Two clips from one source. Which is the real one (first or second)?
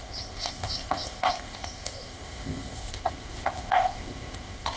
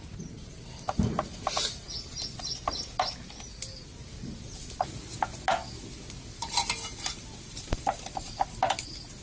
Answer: second